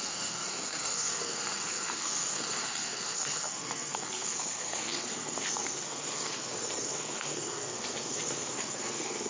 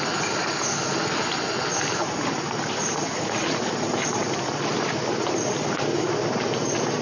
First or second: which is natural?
second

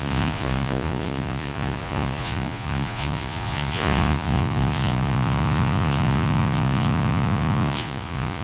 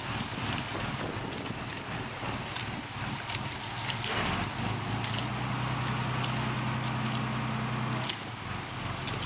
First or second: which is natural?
second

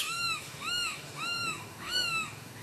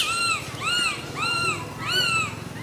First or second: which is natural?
second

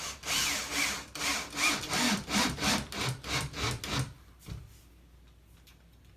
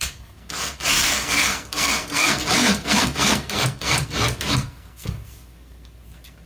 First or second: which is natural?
first